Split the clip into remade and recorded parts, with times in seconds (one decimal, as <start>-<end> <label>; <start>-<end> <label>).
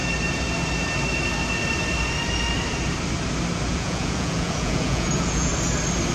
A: 0.0-3.7 recorded; 3.7-5.5 remade; 5.5-6.1 recorded